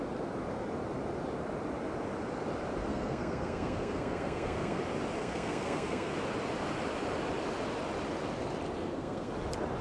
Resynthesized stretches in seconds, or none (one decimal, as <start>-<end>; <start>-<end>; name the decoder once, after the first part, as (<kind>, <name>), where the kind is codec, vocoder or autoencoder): 2.9-4.8 (codec, SNAC); 5.2-6.1; 8.8-9.3